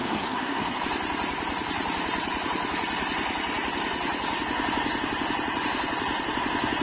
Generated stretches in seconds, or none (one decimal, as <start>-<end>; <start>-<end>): 0.0-0.8